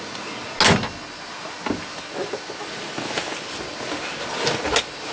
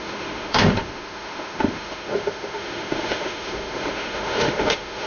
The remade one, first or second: second